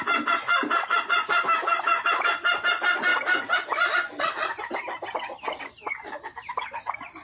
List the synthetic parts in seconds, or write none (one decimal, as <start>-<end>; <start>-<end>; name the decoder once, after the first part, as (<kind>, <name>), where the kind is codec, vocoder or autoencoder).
3.1-4.2 (vocoder, BigVGAN v2)